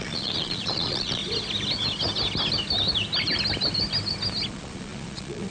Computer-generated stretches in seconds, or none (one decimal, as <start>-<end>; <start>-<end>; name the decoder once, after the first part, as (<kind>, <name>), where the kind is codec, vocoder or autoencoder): 0.0-1.2 (vocoder, Vocos); 4.5-5.5